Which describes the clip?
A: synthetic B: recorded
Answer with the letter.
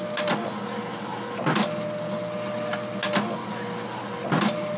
B